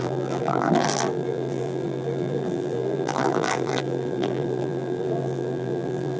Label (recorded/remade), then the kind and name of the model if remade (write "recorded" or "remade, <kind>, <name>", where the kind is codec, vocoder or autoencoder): remade, vocoder, BigVGAN v2